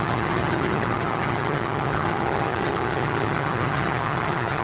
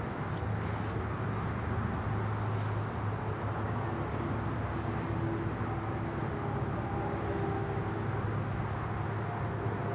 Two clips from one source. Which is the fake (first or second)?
first